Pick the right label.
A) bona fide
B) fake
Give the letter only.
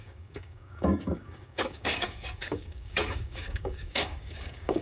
B